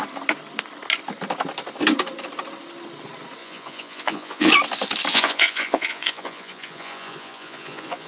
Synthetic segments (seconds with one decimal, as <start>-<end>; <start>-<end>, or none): 3.4-4.5; 5.1-8.1